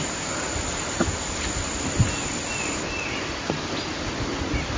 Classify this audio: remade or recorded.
recorded